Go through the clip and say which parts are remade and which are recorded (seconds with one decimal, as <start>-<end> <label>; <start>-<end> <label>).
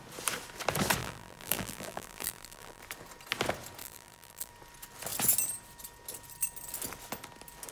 0.0-1.0 recorded; 1.0-2.8 remade; 2.8-3.8 recorded; 3.8-4.5 remade; 4.5-7.7 recorded